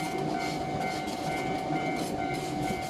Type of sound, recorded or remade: recorded